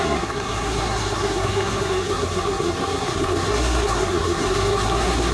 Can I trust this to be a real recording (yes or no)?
no